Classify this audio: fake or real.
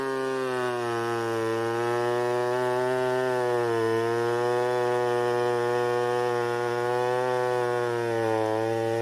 real